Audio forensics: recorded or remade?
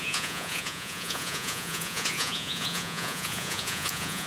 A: remade